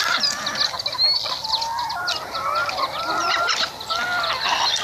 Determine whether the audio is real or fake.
real